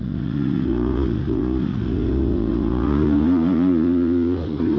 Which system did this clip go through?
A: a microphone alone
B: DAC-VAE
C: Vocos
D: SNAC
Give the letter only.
C